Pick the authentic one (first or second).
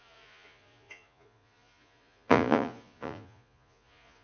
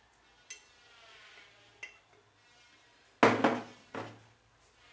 second